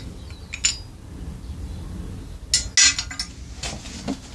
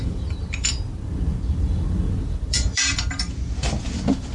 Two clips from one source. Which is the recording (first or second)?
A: first